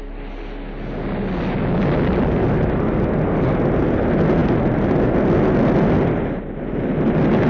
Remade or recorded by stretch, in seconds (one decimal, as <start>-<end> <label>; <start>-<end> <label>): 0.0-7.5 recorded